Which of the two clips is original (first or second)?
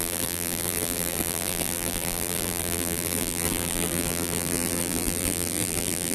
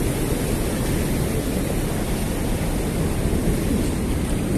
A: second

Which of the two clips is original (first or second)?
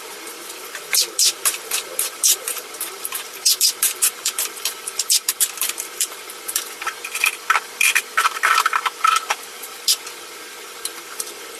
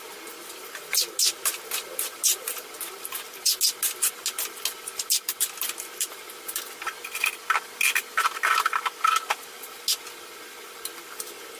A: second